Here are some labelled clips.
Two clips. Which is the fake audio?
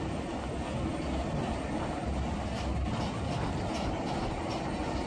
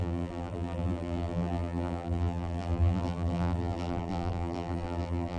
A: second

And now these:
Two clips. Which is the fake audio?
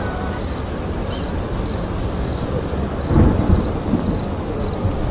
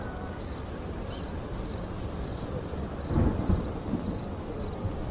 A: second